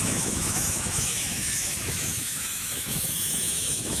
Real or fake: fake